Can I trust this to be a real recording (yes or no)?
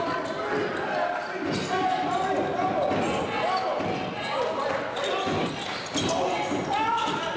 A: yes